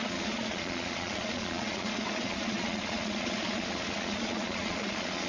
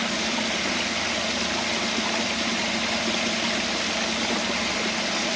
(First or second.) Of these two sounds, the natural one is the second